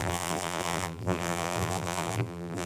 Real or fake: fake